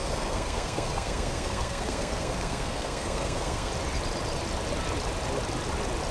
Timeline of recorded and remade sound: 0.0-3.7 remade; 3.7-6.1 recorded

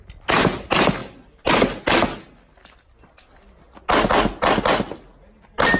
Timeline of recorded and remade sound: 0.0-5.8 recorded

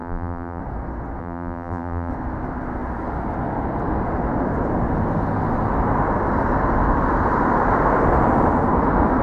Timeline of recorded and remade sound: 0.0-0.6 remade; 0.6-1.2 recorded; 1.2-2.1 remade; 2.1-9.2 recorded

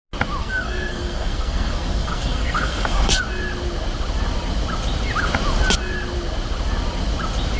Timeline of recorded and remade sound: 0.0-0.4 recorded; 0.4-3.2 remade; 3.2-7.6 recorded